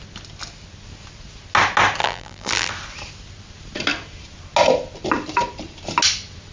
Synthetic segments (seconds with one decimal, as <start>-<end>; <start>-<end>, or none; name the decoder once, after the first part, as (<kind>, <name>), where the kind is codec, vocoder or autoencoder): 2.0-2.7 (vocoder, BigVGAN v2)